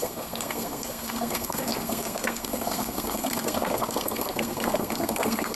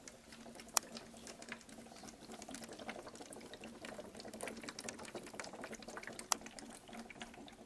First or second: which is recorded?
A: second